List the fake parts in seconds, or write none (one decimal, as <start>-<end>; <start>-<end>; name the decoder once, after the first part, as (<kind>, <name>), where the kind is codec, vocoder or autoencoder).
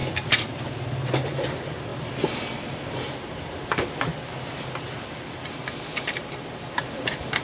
0.0-1.9 (vocoder, BigVGAN v2); 3.0-4.1; 6.7-7.4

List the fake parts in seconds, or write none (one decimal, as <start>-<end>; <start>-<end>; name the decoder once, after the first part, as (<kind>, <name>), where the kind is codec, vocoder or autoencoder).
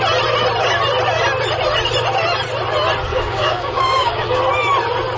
3.1-4.4 (codec, DAC)